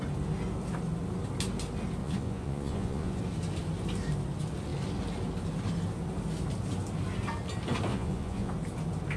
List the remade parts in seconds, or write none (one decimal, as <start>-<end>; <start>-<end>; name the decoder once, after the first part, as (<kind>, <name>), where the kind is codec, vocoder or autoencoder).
2.0-3.2 (vocoder, Vocos); 7.9-8.5